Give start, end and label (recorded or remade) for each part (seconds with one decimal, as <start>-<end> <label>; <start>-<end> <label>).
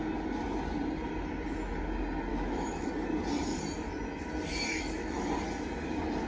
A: 0.0-2.3 recorded; 2.3-2.9 remade; 2.9-4.7 recorded; 4.7-5.3 remade; 5.3-6.3 recorded